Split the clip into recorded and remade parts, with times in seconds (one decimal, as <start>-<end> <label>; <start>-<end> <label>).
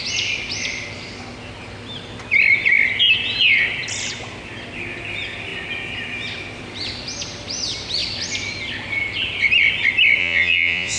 0.0-10.2 recorded; 10.2-11.0 remade